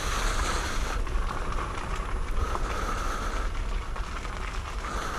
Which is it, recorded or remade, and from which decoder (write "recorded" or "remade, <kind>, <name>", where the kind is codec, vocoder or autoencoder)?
recorded